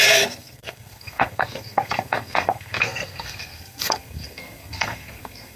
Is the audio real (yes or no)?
no